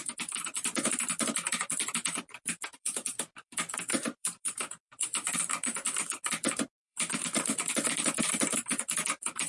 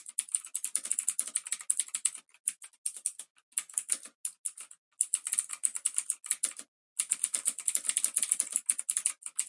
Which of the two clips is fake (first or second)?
first